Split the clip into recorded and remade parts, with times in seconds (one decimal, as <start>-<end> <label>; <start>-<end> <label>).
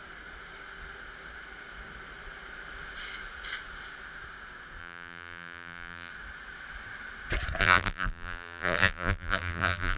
0.0-4.8 recorded; 4.8-6.1 remade; 6.1-7.6 recorded; 7.6-10.0 remade